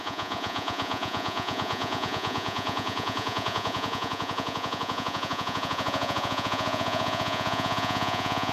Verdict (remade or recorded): remade